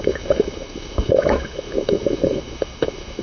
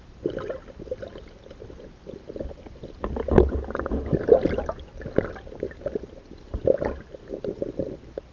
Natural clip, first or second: second